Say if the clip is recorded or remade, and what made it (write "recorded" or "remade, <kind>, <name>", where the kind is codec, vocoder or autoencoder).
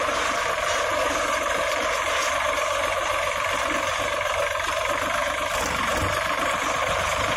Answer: remade, vocoder, BigVGAN v2